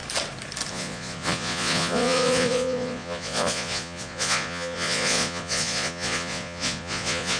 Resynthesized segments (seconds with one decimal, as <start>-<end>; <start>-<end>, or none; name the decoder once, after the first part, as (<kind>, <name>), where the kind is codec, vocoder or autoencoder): 0.7-7.4 (vocoder, Vocos)

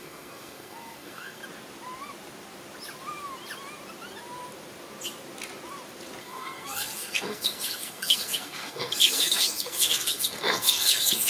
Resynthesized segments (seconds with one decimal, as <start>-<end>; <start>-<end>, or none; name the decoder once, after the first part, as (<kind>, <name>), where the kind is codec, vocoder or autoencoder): 0.0-1.4 (codec, SNAC); 6.2-11.3

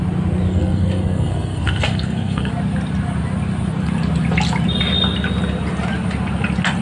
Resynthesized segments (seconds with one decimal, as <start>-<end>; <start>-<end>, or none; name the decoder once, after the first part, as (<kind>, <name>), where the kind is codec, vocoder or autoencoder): 0.5-2.5 (codec, SNAC)

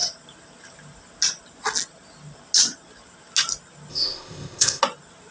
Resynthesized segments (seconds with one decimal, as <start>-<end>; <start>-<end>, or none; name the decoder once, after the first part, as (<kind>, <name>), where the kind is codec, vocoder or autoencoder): 3.9-4.8 (codec, ZipCodec)

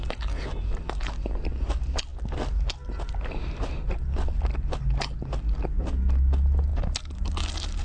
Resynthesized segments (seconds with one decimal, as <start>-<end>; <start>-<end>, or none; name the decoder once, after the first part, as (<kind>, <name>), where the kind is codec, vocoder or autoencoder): none

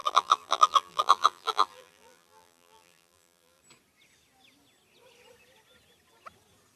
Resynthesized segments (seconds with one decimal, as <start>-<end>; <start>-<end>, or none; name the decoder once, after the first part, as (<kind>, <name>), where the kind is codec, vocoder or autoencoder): 0.0-3.6 (vocoder, BigVGAN v2)